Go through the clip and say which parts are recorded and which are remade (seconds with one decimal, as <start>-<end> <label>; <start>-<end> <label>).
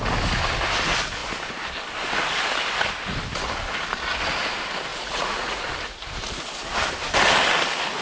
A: 0.0-4.9 recorded; 4.9-5.6 remade; 5.6-8.0 recorded